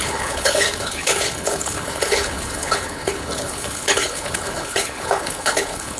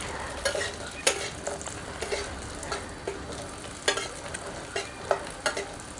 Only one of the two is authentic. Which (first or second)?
second